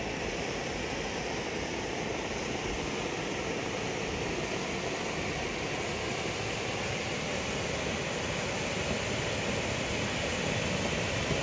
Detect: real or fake real